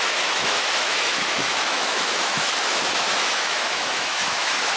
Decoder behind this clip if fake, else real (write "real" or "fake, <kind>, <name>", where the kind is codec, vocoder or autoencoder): fake, autoencoder, DAC-VAE